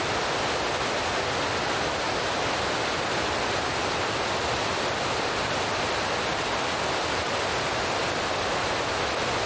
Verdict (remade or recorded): recorded